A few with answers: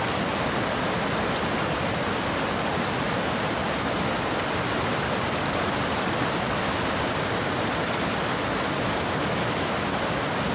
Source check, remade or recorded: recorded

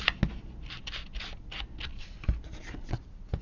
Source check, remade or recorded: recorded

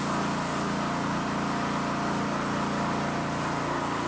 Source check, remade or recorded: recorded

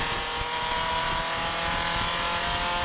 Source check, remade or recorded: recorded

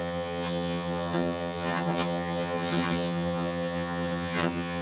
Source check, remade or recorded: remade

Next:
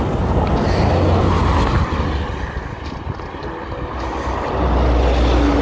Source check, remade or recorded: recorded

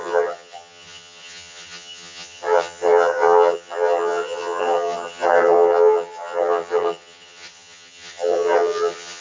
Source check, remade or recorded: remade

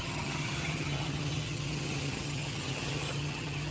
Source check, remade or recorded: remade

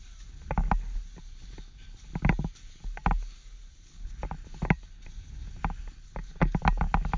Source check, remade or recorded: recorded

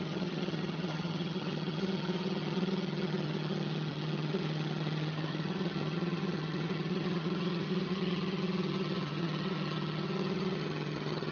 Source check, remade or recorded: remade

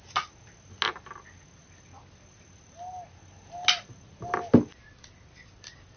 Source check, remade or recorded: recorded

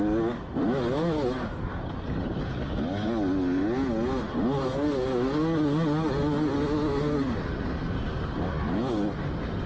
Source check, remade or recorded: recorded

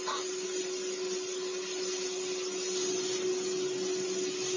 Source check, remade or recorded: recorded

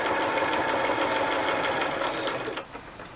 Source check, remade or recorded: recorded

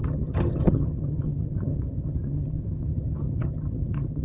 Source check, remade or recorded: remade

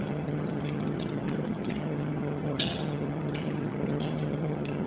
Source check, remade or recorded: remade